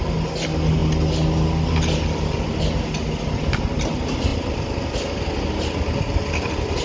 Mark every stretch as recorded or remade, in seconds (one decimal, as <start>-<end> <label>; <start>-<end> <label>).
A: 0.0-6.8 recorded